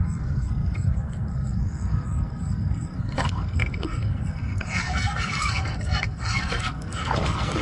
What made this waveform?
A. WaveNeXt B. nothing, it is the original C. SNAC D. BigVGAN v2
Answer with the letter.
C